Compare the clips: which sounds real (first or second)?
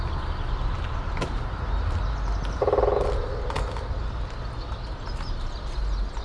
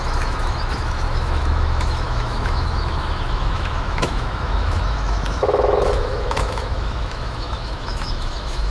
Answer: first